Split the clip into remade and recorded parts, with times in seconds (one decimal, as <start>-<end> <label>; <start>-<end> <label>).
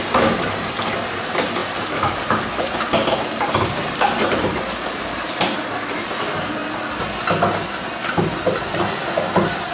0.0-6.6 remade; 6.6-9.7 recorded